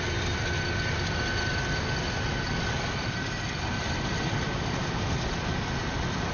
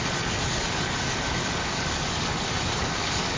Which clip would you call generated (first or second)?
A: second